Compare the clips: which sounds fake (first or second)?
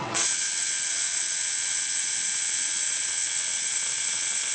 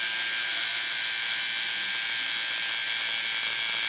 first